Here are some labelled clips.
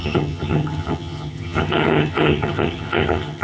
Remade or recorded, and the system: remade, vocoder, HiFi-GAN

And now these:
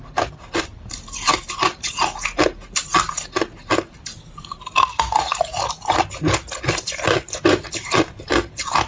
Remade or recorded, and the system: recorded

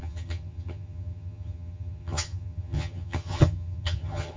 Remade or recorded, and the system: remade, vocoder, HiFi-GAN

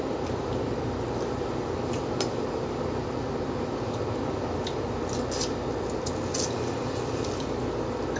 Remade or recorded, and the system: recorded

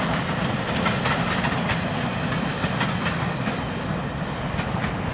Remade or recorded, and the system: recorded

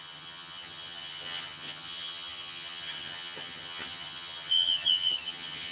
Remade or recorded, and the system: remade, vocoder, HiFi-GAN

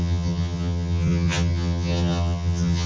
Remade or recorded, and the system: remade, vocoder, HiFi-GAN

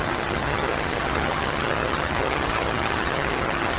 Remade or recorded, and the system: remade, vocoder, HiFi-GAN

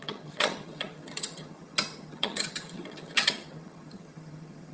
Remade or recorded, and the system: remade, vocoder, HiFi-GAN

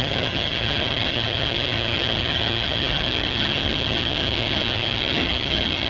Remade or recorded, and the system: remade, vocoder, HiFi-GAN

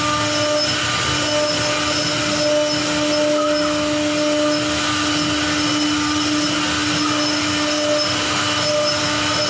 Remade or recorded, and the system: recorded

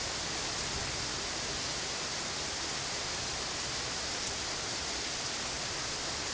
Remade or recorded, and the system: recorded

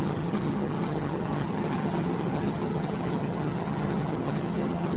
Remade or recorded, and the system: remade, vocoder, HiFi-GAN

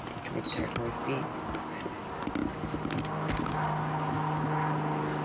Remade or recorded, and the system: recorded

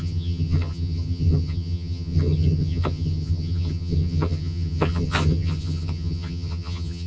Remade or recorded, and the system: remade, vocoder, HiFi-GAN